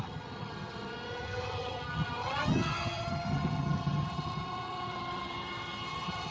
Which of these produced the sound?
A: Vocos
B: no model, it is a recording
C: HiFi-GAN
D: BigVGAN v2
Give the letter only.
C